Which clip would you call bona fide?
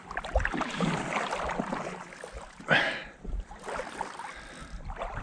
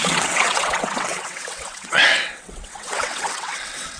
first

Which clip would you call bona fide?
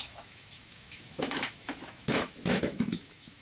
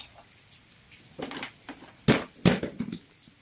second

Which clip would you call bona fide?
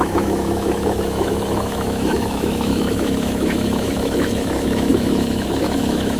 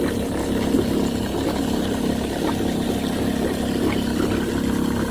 second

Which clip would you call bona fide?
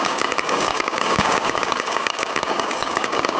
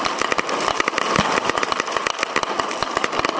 second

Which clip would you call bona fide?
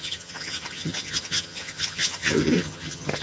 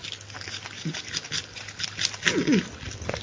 second